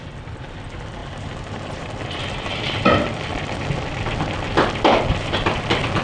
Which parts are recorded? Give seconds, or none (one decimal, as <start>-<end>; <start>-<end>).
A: 0.0-1.0; 1.9-6.0